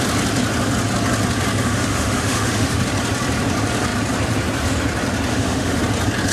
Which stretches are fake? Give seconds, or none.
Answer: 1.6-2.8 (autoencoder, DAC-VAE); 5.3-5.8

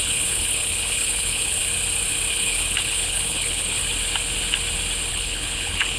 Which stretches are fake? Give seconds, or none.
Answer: 0.0-1.6 (codec, HILCodec); 2.3-3.8; 5.1-6.0

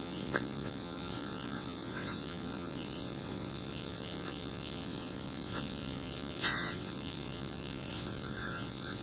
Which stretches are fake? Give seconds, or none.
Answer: 0.0-9.0 (vocoder, WaveNeXt)

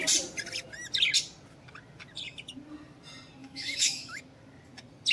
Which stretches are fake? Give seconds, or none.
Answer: 3.4-4.2 (autoencoder, DAC-VAE)

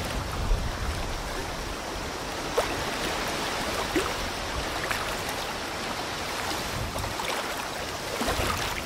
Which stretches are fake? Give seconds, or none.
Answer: 1.4-6.7 (vocoder, BigVGAN v2)

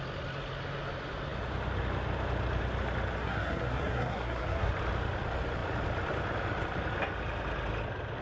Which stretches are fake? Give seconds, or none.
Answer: 3.2-4.7 (codec, SNAC)